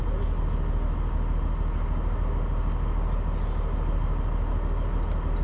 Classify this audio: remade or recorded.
recorded